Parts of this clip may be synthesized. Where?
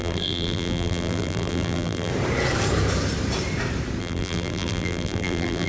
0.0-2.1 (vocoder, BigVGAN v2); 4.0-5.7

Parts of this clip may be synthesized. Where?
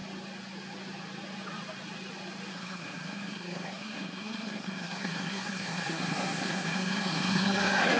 2.5-8.0 (codec, SNAC)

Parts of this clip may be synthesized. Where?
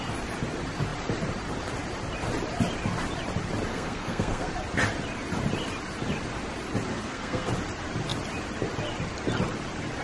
3.7-4.5 (codec, SNAC); 6.9-7.5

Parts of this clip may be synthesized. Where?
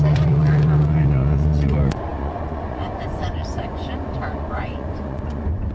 0.0-5.7 (vocoder, Vocos)